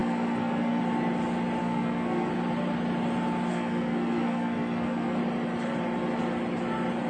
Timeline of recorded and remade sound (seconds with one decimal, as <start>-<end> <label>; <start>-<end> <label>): 0.0-0.8 remade; 0.8-1.6 recorded; 1.6-2.3 remade; 2.3-3.5 recorded; 3.5-5.2 remade; 5.2-7.1 recorded